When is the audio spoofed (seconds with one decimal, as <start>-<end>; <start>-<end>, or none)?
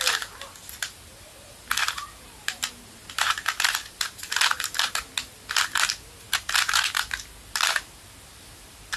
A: 0.0-5.1; 6.2-9.0